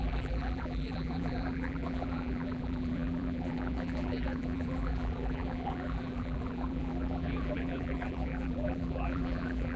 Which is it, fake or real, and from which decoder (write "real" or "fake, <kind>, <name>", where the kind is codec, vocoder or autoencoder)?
fake, vocoder, BigVGAN v2